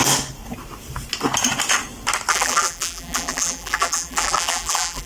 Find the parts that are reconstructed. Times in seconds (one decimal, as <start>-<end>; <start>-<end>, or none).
2.3-5.1